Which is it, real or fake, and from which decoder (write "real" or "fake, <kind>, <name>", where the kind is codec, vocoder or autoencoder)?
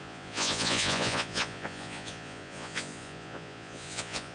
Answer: fake, vocoder, Vocos